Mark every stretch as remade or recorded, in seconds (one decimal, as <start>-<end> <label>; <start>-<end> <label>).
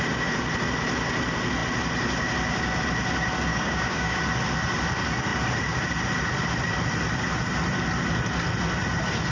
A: 0.0-3.5 recorded; 3.5-4.2 remade; 4.2-9.3 recorded